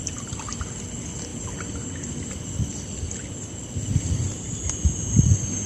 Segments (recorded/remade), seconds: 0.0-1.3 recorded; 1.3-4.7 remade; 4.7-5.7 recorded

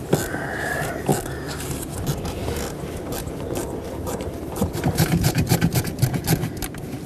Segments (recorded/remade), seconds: 0.0-3.6 recorded; 3.6-5.7 remade; 5.7-7.1 recorded

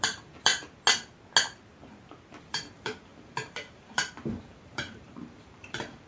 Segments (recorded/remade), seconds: 0.0-0.5 remade; 0.5-2.4 recorded; 2.4-6.1 remade

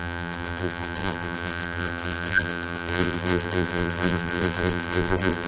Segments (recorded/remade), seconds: 0.0-5.5 remade

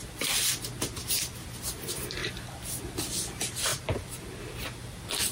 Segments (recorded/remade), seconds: 0.0-0.6 remade; 0.6-2.2 recorded; 2.2-3.3 remade; 3.3-3.7 recorded; 3.7-4.4 remade; 4.4-5.3 recorded

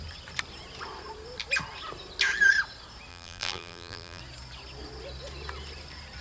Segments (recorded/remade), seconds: 0.0-3.1 recorded; 3.1-4.2 remade; 4.2-6.2 recorded